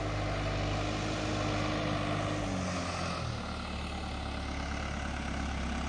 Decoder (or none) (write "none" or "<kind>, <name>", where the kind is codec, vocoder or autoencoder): none